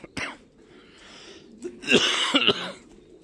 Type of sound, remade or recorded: recorded